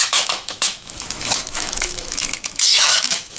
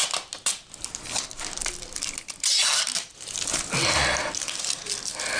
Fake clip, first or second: first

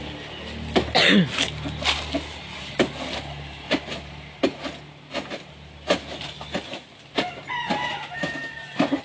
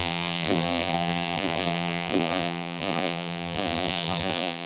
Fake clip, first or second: second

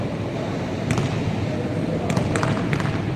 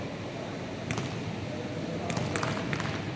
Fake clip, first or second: first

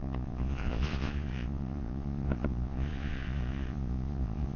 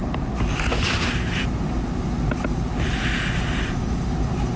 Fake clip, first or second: first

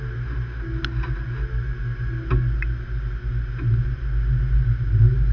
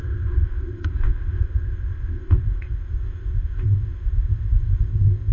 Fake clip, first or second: second